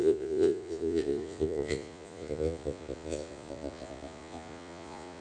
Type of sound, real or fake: fake